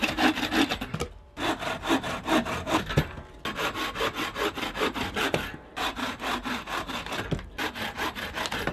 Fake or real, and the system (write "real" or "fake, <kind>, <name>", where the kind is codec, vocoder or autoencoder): real